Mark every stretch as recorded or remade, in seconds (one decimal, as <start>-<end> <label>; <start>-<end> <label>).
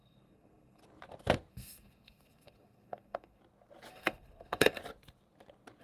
0.0-0.8 remade; 0.8-1.5 recorded; 1.5-3.4 remade; 3.4-3.9 recorded; 3.9-4.8 remade; 4.8-5.8 recorded